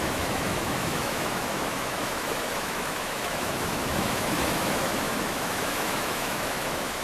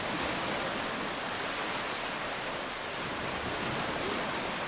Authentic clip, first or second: second